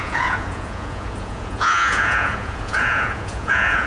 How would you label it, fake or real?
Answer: fake